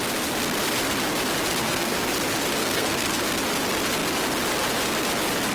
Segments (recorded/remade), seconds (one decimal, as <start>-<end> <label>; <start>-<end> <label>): 0.0-1.6 recorded; 1.6-2.1 remade; 2.1-2.6 recorded; 2.6-3.2 remade; 3.2-5.5 recorded